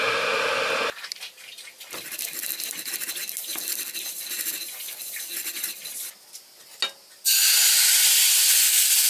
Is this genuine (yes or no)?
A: yes